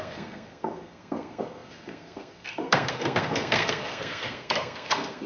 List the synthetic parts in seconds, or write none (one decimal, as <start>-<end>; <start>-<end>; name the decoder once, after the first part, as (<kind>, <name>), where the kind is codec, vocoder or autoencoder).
0.0-5.3 (codec, SNAC)